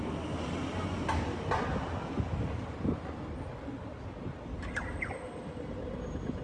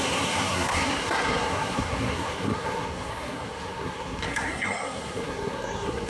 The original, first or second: first